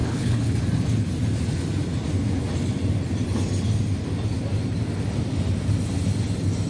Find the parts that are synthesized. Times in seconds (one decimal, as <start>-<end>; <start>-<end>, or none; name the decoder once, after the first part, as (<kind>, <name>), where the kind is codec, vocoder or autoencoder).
0.0-0.6 (codec, HILCodec)